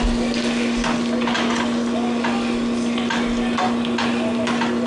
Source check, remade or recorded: recorded